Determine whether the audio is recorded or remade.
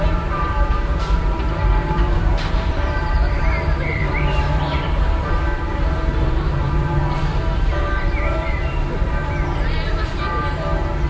remade